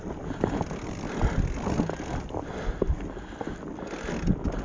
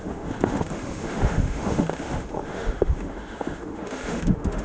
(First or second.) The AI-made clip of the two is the second